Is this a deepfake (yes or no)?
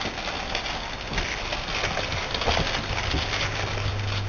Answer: no